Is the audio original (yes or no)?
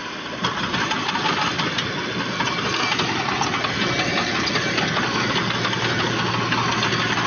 yes